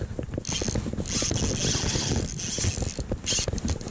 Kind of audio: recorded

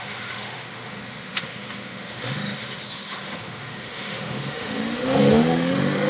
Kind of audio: remade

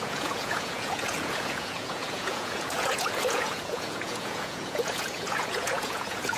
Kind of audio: remade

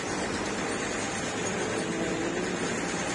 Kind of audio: recorded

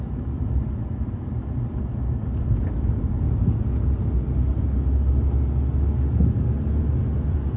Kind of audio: recorded